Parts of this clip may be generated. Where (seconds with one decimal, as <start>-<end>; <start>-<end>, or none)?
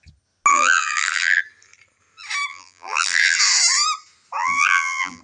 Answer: 0.5-1.4; 2.5-3.4; 4.4-5.2